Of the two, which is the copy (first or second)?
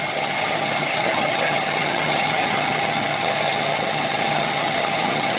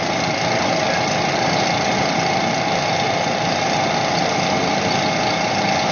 first